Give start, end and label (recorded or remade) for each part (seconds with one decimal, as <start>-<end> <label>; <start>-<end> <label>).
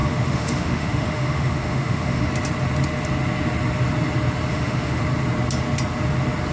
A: 0.0-2.3 remade; 2.3-4.5 recorded; 4.5-5.0 remade; 5.0-6.5 recorded